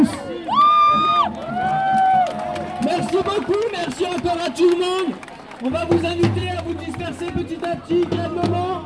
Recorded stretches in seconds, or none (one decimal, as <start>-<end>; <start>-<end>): 0.0-6.4; 7.0-8.9